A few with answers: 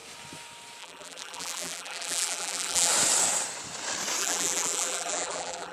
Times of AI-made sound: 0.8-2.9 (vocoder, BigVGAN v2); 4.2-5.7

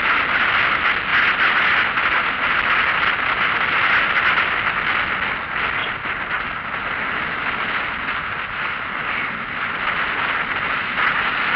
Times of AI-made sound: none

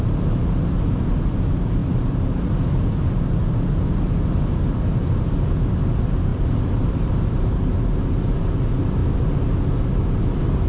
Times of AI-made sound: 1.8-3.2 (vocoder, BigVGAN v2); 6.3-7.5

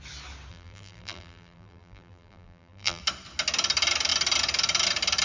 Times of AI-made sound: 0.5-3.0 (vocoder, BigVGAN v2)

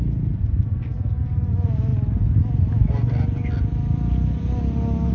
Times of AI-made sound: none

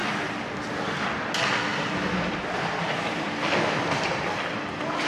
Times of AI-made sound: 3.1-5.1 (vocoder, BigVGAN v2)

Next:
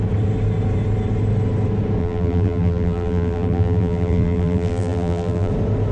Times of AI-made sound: 2.0-5.5 (vocoder, BigVGAN v2)

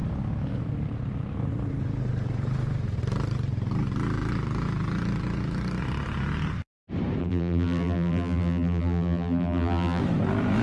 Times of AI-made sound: 7.2-10.0 (vocoder, BigVGAN v2)